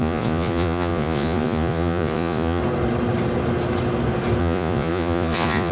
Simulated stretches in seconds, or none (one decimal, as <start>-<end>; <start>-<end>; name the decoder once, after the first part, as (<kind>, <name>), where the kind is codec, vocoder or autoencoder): 0.0-2.6 (vocoder, Vocos); 4.4-5.7